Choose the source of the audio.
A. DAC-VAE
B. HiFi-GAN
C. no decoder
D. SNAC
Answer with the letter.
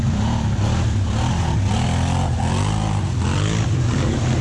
C